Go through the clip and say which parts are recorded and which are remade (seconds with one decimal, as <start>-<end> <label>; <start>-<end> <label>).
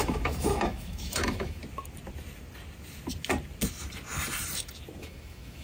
0.0-1.6 remade; 1.6-5.0 recorded; 5.0-5.6 remade